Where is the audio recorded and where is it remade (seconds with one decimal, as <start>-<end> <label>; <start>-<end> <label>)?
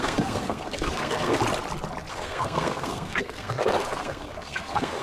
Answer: 0.0-1.4 remade; 1.4-2.1 recorded; 2.1-5.0 remade